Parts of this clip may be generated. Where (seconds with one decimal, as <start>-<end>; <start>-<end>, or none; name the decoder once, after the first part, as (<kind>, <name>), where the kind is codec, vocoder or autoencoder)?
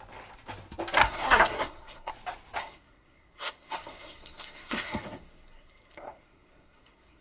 1.0-2.1 (codec, SNAC); 2.6-7.2